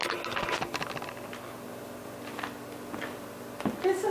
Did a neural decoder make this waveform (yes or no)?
no